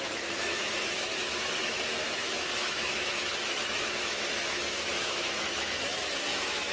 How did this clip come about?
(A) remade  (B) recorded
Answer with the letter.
A